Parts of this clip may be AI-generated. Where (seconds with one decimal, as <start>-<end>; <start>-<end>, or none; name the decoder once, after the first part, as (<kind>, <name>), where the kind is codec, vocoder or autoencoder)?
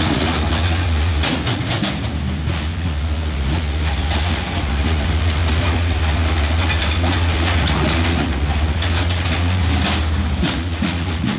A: 0.0-1.7 (vocoder, Vocos); 2.5-9.6; 10.4-11.4